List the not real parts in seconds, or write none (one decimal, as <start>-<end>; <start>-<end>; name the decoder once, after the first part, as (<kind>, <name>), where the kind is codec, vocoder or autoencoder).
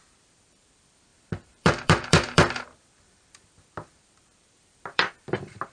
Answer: 0.0-5.7 (vocoder, BigVGAN v2)